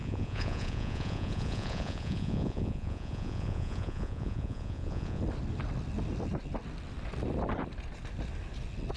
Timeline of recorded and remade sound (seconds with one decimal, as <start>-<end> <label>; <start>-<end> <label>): 0.0-5.2 remade; 5.2-9.0 recorded